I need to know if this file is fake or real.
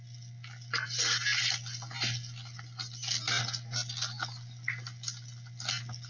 real